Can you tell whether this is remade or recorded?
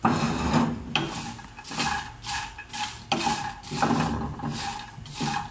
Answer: recorded